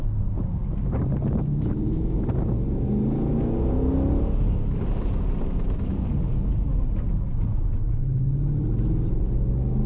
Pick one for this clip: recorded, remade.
recorded